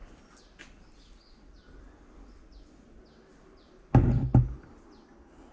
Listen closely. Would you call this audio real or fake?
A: real